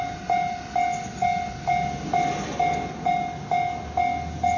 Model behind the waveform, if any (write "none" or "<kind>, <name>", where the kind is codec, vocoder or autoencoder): none